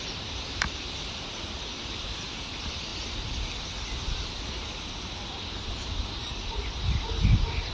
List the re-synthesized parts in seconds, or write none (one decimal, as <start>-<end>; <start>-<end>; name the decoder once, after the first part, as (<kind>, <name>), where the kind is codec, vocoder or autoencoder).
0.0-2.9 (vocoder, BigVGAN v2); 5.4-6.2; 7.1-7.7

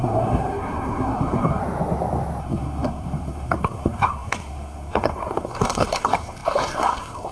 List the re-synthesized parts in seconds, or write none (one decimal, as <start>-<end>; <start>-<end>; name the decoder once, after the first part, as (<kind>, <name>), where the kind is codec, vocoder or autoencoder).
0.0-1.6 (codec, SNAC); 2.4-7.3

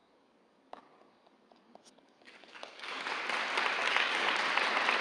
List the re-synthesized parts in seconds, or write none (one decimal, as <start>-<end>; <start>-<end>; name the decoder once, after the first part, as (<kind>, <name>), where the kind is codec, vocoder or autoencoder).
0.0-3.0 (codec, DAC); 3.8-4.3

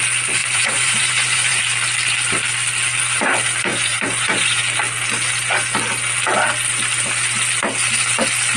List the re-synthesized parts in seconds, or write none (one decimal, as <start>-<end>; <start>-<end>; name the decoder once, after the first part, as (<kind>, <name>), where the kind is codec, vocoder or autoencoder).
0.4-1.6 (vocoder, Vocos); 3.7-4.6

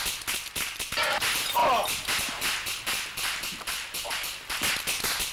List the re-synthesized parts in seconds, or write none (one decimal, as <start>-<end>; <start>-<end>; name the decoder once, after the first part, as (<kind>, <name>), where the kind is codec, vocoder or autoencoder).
none

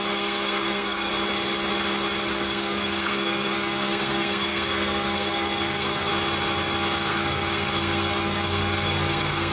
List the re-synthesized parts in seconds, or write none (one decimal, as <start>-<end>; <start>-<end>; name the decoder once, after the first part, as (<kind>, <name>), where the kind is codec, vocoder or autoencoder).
0.0-1.1 (codec, SNAC); 2.3-6.1; 7.1-9.5

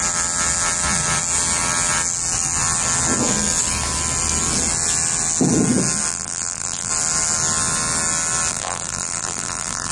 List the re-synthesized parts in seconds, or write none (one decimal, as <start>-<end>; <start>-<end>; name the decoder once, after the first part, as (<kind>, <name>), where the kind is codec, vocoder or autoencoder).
6.1-6.9 (vocoder, BigVGAN v2); 8.5-9.9